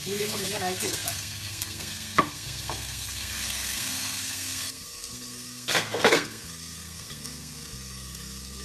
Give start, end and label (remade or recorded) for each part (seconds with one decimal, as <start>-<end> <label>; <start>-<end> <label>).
0.0-8.6 remade